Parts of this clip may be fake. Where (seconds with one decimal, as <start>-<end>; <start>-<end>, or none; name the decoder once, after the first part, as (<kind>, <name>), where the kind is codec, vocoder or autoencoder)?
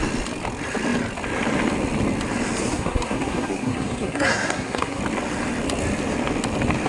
2.7-5.0 (codec, SNAC)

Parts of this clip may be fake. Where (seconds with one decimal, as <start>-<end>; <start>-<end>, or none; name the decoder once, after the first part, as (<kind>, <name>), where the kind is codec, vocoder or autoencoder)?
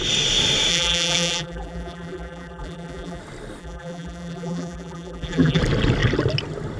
0.7-3.2 (vocoder, BigVGAN v2); 3.6-5.6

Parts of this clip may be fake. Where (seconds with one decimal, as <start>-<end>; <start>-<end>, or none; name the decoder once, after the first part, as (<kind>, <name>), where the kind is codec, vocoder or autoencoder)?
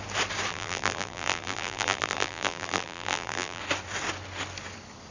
0.5-3.6 (vocoder, BigVGAN v2)